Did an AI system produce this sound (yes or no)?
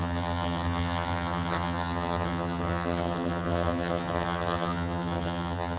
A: yes